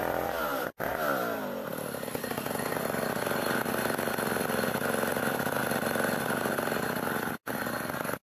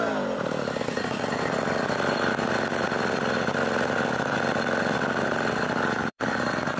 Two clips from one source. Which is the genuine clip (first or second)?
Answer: first